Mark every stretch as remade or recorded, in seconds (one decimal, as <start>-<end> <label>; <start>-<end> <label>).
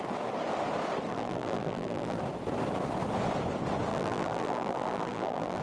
0.0-1.1 recorded; 1.1-2.2 remade; 2.2-3.9 recorded; 3.9-5.6 remade